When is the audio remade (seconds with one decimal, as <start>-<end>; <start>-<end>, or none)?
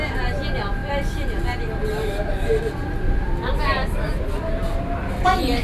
none